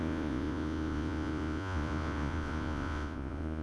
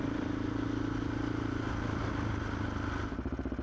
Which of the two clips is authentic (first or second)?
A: second